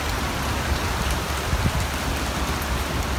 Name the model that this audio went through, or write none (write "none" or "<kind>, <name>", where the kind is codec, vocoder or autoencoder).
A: none